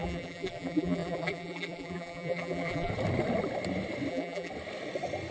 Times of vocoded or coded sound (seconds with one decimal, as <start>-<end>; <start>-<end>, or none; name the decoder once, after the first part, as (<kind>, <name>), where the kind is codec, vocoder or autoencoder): 0.0-2.9 (vocoder, BigVGAN v2); 4.1-4.5